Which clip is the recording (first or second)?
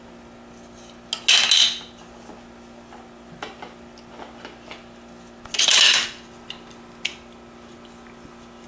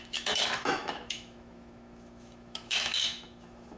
first